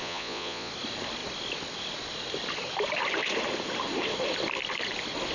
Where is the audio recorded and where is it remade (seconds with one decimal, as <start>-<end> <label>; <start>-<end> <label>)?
0.0-0.7 remade; 0.7-5.3 recorded